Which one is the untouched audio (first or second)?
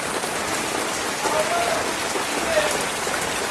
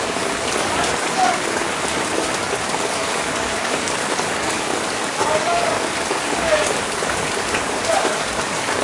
first